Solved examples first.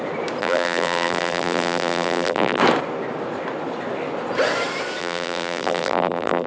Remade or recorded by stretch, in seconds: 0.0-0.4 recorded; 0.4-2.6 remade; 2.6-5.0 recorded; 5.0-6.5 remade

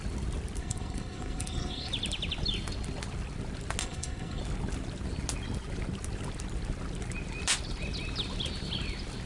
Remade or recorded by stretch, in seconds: 0.0-0.6 recorded; 0.6-1.9 remade; 1.9-3.8 recorded; 3.8-4.4 remade; 4.4-9.3 recorded

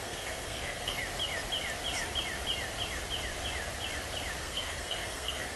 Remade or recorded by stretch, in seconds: 0.0-1.0 remade; 1.0-4.4 recorded; 4.4-5.6 remade